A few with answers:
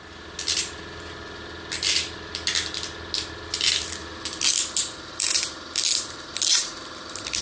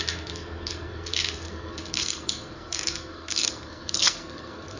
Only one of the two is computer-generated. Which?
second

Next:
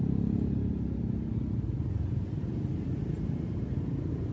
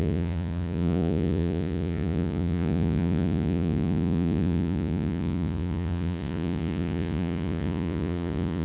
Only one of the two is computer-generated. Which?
second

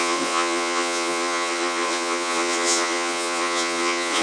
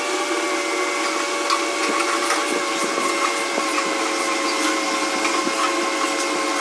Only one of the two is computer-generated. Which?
first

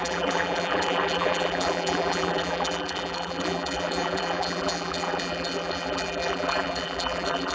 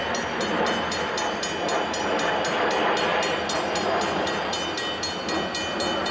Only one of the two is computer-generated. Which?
first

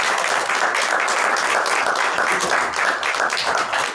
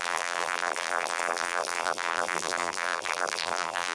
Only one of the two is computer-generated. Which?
second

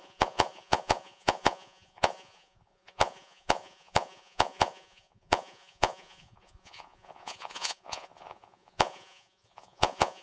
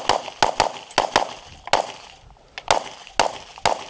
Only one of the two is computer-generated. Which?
first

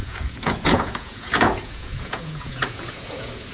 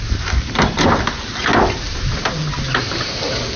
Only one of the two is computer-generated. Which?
first